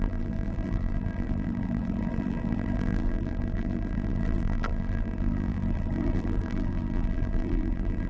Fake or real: fake